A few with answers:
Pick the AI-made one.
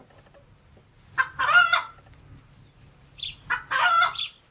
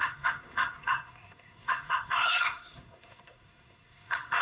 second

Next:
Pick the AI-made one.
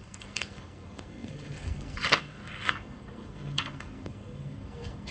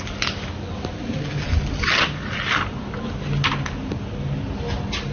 first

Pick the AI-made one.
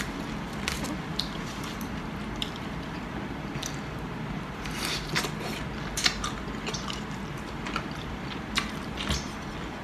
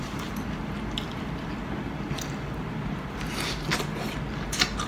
first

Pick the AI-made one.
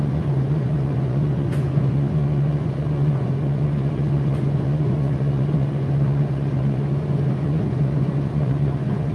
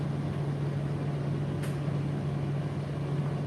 first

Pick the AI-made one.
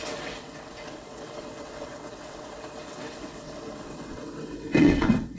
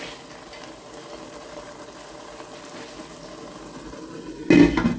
first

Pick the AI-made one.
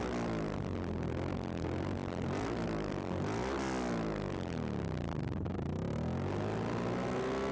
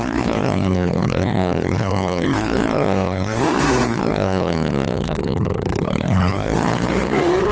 second